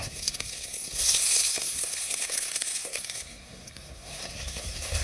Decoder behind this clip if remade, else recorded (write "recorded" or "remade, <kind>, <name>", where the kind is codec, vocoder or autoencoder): remade, codec, SNAC